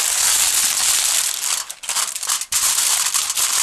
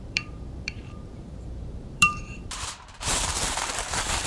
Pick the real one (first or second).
first